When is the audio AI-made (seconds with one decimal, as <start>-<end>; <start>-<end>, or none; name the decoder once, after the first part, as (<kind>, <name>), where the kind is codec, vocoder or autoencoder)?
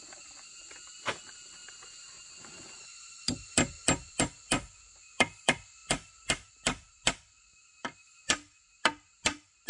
0.0-1.6 (vocoder, BigVGAN v2); 2.2-3.8; 4.4-9.7